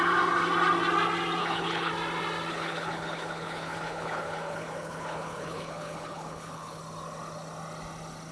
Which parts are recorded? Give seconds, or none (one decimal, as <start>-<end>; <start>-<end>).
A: 0.0-1.4; 1.9-2.5; 6.8-8.3